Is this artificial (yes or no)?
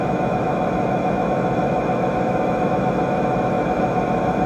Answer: yes